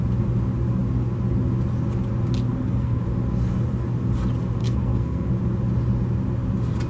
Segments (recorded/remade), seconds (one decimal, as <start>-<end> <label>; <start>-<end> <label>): 0.0-2.5 recorded; 2.5-3.0 remade; 3.0-4.6 recorded; 4.6-5.3 remade; 5.3-6.9 recorded